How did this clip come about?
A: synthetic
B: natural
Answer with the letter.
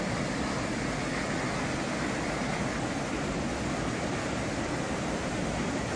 B